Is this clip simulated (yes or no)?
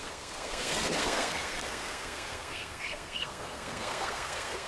yes